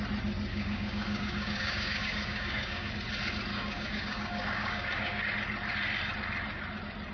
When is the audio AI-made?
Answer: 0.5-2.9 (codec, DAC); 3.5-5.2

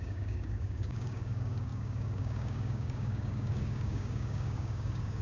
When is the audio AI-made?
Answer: 0.0-5.2 (codec, DAC)

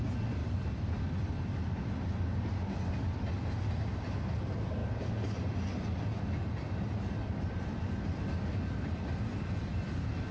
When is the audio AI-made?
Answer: none

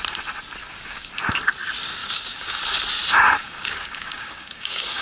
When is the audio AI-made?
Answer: 0.6-1.1 (codec, DAC); 2.0-2.6; 3.4-5.0

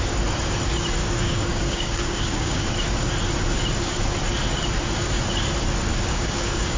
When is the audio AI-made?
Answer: 1.0-2.6 (codec, DAC); 5.9-6.8